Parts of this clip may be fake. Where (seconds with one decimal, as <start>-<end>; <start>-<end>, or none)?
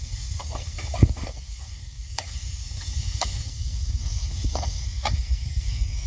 0.0-6.1